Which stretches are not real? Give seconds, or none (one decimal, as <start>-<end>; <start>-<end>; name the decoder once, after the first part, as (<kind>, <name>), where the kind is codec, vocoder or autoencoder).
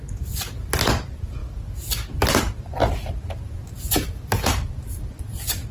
none